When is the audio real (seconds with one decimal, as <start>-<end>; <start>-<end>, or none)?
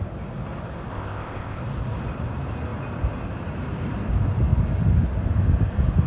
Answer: 0.0-0.9; 1.6-6.1